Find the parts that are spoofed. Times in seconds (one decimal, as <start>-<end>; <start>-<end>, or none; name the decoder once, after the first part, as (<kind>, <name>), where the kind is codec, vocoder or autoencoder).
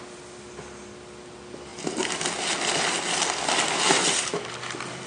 none